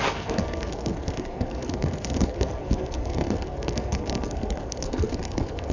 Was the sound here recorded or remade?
remade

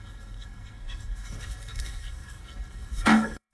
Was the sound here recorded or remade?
remade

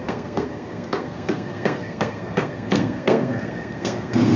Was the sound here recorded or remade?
remade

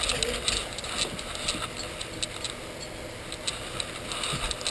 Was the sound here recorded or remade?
recorded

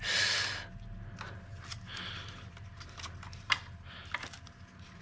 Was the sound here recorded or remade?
recorded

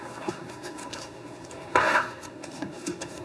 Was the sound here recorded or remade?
remade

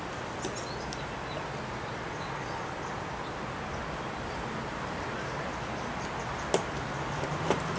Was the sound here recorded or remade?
recorded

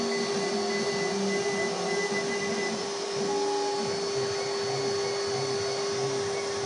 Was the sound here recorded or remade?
recorded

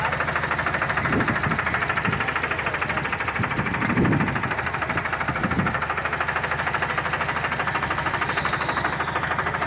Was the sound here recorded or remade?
recorded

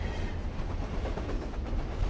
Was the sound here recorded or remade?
recorded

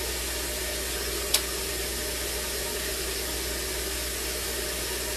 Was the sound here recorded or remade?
recorded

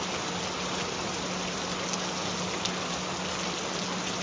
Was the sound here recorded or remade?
recorded